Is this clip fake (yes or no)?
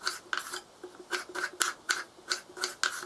no